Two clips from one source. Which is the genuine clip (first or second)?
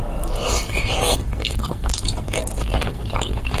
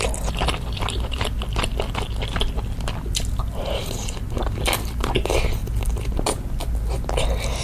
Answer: second